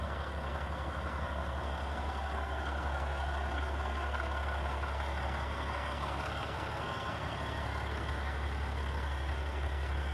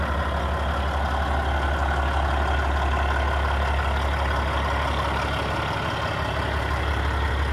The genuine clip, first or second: second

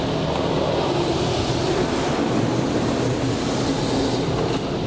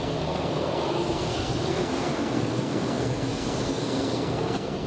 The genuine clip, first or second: first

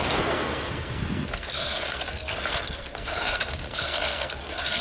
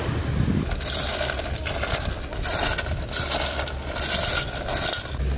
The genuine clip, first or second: second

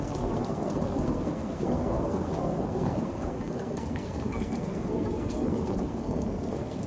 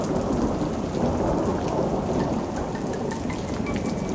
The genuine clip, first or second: second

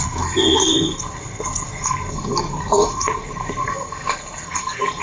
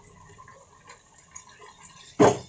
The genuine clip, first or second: second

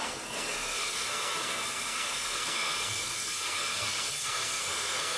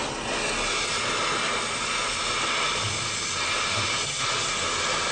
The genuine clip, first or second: second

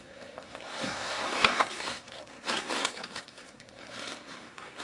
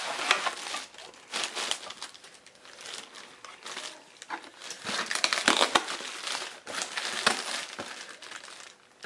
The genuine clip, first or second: second